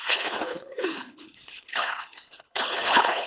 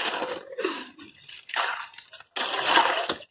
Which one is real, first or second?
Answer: second